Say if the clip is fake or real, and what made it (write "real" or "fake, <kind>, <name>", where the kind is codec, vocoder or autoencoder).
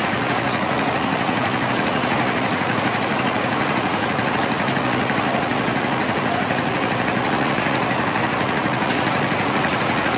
fake, vocoder, Vocos